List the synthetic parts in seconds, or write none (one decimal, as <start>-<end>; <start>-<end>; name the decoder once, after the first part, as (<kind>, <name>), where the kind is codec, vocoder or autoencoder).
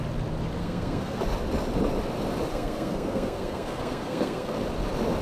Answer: 0.6-1.2 (codec, SNAC); 2.5-4.6